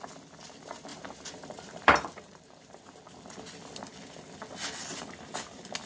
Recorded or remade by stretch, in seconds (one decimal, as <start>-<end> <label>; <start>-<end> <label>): 0.0-0.9 recorded; 0.9-3.0 remade; 3.0-5.9 recorded